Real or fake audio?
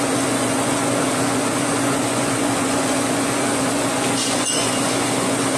fake